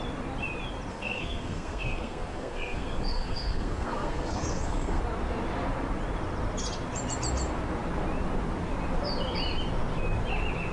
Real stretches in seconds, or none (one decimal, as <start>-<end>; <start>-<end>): 0.0-0.9; 5.0-10.7

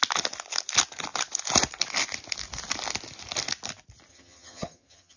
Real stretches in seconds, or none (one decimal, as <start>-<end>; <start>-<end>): 0.0-4.1

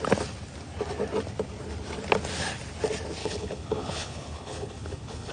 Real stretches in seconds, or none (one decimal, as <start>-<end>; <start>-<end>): 0.0-3.2

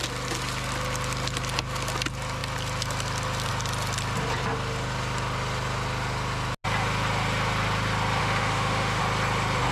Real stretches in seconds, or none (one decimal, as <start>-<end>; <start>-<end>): 0.0-8.2; 9.0-9.7

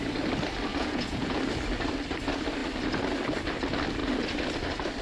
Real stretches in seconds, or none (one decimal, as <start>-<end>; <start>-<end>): 0.0-0.7; 1.4-5.0

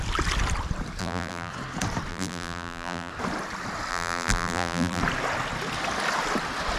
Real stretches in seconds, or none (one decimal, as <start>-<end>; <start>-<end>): 0.0-1.0; 1.5-2.1; 3.1-3.9; 5.0-6.8